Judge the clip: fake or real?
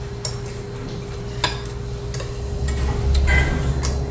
real